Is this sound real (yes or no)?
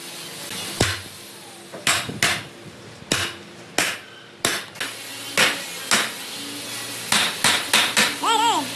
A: yes